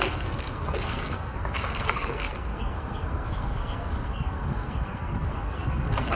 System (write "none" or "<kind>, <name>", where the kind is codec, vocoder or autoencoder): codec, SNAC